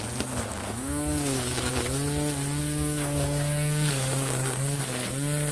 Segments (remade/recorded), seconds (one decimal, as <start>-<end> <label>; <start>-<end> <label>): 0.0-0.5 recorded; 0.5-1.7 remade; 1.7-2.6 recorded; 2.6-4.8 remade; 4.8-5.5 recorded